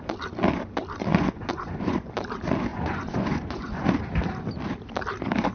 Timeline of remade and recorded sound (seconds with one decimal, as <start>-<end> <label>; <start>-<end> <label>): 0.0-1.1 recorded; 1.1-2.1 remade; 2.1-2.7 recorded; 2.7-3.9 remade; 3.9-5.5 recorded